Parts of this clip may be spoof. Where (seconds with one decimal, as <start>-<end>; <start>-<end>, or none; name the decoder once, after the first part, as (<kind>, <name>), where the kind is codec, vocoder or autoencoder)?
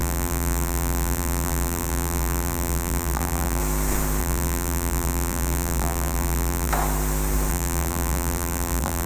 0.0-3.6 (vocoder, BigVGAN v2); 4.2-6.7; 7.5-9.1